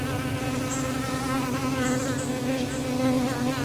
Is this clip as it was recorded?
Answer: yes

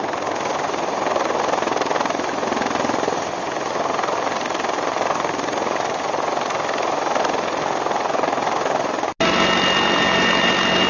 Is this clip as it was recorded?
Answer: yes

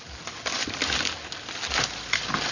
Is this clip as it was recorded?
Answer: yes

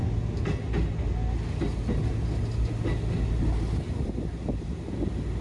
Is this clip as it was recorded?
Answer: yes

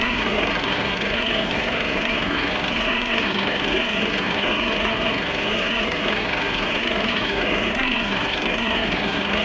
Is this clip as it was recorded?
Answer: no